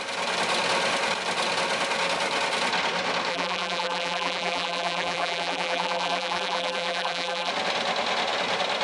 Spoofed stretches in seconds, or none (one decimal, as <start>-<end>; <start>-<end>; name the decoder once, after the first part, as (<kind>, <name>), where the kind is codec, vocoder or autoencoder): 3.3-7.5 (vocoder, BigVGAN v2)